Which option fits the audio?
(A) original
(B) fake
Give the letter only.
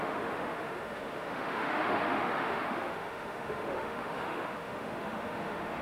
B